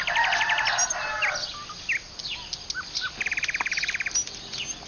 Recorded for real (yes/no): yes